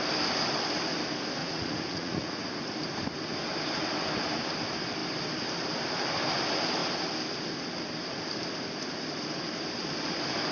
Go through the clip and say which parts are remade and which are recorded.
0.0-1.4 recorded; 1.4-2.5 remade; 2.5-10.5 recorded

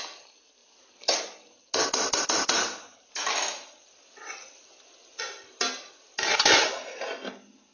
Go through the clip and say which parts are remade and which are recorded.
0.0-7.7 recorded